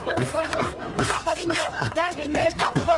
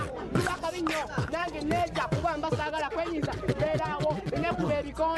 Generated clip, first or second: first